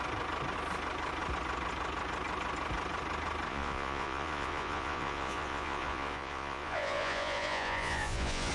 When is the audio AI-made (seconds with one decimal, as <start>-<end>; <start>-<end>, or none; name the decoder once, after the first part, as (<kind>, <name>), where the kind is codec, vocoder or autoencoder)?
3.5-8.5 (vocoder, Vocos)

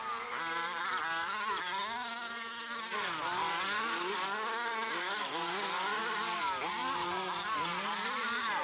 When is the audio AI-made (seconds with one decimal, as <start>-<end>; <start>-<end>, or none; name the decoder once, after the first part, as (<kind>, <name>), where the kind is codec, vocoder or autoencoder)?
0.0-1.8 (vocoder, BigVGAN v2); 6.0-8.6

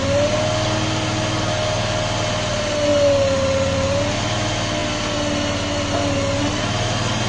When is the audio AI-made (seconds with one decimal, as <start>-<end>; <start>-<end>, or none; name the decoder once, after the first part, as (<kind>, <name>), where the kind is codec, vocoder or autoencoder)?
none

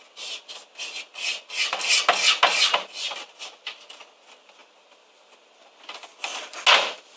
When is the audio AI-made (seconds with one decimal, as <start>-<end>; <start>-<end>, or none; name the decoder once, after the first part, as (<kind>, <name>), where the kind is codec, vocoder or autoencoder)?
none

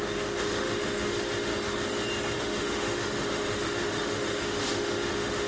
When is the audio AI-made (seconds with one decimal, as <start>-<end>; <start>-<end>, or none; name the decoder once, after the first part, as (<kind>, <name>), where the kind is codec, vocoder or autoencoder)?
0.0-1.5 (autoencoder, DAC-VAE); 2.4-5.5

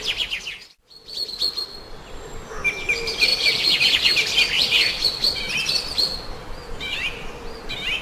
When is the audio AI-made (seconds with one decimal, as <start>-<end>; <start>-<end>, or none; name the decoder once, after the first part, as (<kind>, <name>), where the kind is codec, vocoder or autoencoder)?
3.3-3.9 (vocoder, BigVGAN v2)

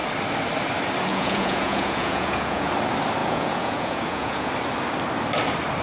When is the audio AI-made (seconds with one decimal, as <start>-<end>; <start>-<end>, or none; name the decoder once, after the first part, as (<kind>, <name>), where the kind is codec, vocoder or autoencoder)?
1.1-2.7 (vocoder, Vocos); 3.2-4.5